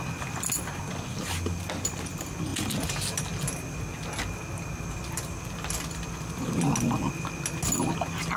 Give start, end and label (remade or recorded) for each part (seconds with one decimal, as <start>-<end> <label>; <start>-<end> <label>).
0.0-8.4 recorded